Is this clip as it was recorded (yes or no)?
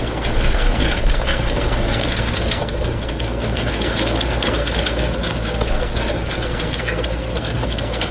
no